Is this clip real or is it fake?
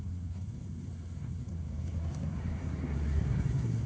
fake